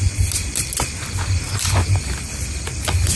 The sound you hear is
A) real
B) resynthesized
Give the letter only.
A